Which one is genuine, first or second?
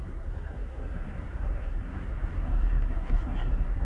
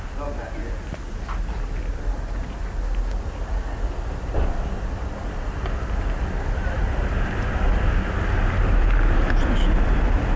second